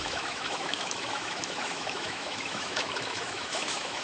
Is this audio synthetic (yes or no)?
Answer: yes